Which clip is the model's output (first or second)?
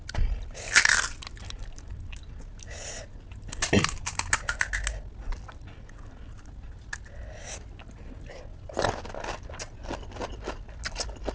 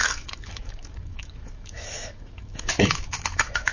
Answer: second